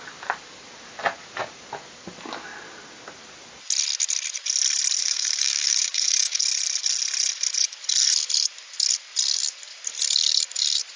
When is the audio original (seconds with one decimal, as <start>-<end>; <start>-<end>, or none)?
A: 0.0-5.0; 6.4-11.0